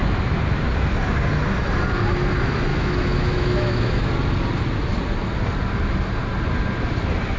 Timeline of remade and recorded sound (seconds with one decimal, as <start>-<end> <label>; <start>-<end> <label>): 0.0-2.7 recorded; 2.7-4.1 remade; 4.1-7.4 recorded